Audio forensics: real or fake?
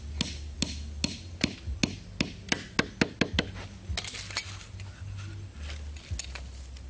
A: real